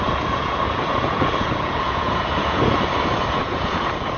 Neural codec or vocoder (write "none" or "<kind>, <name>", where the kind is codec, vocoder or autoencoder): vocoder, Vocos